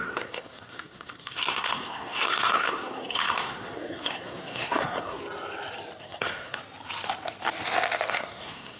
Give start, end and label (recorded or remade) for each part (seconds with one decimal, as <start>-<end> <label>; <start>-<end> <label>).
0.0-5.2 remade; 5.2-6.0 recorded; 6.0-6.6 remade; 6.6-8.1 recorded; 8.1-8.8 remade